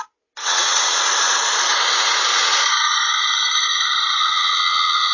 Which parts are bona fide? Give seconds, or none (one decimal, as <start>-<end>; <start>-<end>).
0.0-0.4; 1.0-4.2